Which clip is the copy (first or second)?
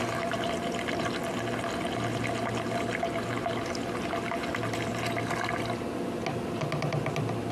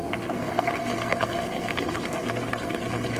second